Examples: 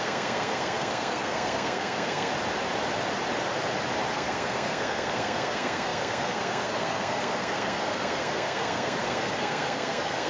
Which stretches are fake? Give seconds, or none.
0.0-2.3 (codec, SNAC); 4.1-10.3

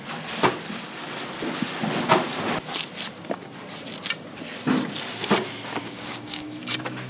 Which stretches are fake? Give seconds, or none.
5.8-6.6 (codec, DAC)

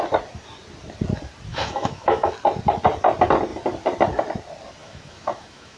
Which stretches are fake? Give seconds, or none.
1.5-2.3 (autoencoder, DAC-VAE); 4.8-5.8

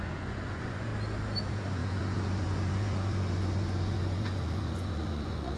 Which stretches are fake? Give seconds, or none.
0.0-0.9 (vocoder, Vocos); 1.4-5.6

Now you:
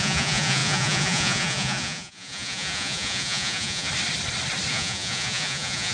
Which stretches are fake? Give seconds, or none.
0.0-3.9 (vocoder, Vocos); 4.7-5.9

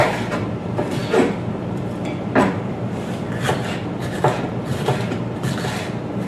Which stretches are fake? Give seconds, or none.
none

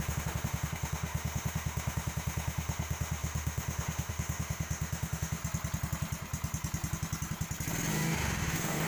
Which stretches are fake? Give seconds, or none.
0.0-5.4 (autoencoder, DAC-VAE); 7.9-8.9

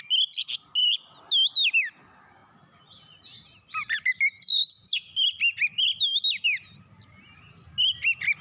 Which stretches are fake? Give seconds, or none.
none